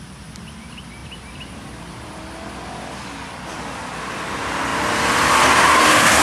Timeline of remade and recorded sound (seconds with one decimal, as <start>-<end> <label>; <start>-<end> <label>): 0.0-6.2 recorded